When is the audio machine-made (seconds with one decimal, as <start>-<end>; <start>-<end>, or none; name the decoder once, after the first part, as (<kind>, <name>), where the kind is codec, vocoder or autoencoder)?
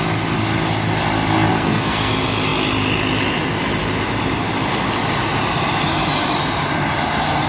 1.5-2.1 (codec, SNAC)